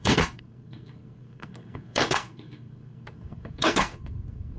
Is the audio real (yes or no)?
no